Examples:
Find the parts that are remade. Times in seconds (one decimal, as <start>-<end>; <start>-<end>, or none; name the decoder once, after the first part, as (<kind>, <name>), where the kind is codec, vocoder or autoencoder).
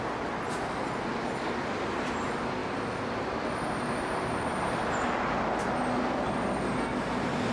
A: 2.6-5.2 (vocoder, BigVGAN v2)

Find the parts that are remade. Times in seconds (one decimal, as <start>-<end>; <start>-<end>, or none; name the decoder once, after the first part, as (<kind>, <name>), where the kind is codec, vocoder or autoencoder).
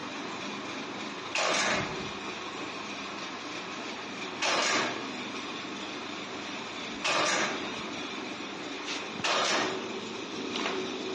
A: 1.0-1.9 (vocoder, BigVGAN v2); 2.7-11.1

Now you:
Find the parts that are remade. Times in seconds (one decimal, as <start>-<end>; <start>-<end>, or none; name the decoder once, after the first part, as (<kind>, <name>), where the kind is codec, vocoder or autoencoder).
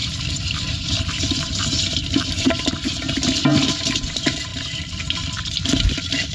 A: 0.0-2.3 (vocoder, BigVGAN v2); 4.5-6.3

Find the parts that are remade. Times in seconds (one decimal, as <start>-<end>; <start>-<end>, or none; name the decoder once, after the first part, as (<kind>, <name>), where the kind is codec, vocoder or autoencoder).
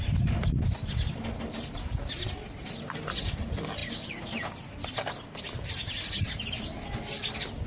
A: none